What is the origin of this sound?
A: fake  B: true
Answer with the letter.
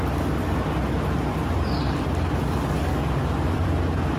A